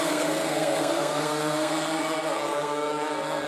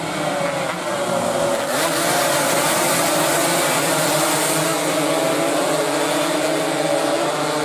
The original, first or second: second